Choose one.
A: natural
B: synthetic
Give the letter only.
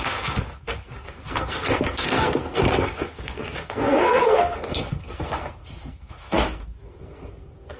B